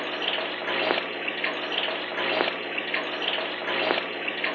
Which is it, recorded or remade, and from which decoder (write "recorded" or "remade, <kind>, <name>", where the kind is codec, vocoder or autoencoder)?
recorded